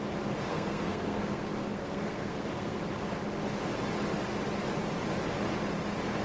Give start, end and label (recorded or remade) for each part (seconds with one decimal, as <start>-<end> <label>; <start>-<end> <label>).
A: 0.0-0.5 recorded; 0.5-2.8 remade; 2.8-6.2 recorded